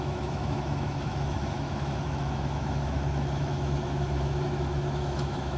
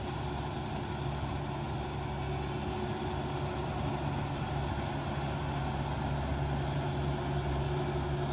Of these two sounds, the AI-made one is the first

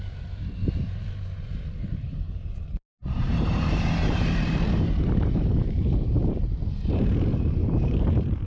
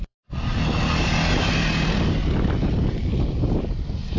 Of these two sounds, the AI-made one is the first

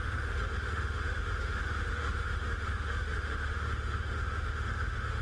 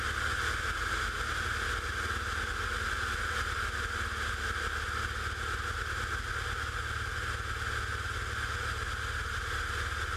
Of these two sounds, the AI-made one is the first